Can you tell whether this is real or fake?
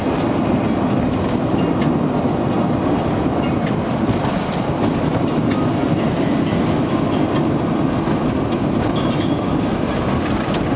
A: real